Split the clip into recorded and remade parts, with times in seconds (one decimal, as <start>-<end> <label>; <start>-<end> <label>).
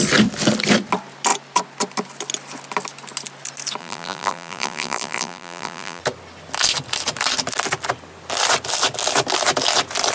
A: 0.0-3.8 recorded; 3.8-6.0 remade; 6.0-10.1 recorded